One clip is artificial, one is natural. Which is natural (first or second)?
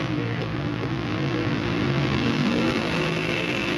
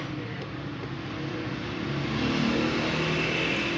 second